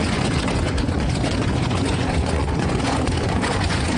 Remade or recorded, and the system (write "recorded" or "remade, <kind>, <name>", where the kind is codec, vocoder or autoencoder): remade, vocoder, Vocos